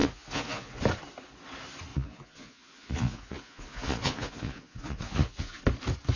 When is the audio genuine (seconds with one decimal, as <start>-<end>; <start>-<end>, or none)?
0.8-1.9; 5.6-6.2